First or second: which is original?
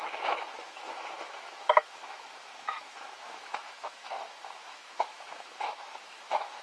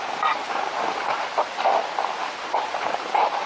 second